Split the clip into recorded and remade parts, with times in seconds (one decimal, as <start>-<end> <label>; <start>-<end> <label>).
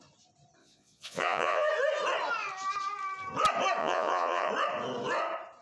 0.0-0.6 recorded; 0.6-1.7 remade; 1.7-3.8 recorded; 3.8-4.5 remade; 4.5-5.6 recorded